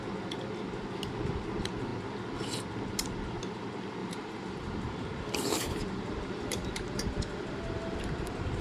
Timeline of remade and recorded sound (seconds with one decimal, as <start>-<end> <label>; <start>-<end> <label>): 0.0-4.0 recorded; 4.0-8.6 remade